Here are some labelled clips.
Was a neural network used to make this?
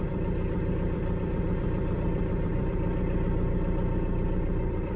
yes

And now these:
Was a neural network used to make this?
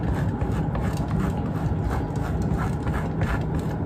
no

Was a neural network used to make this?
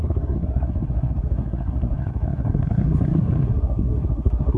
yes